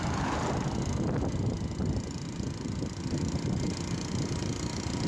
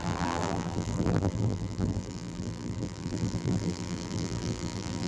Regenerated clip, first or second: second